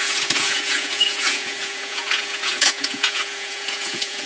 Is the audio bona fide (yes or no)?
no